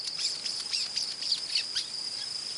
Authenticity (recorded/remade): recorded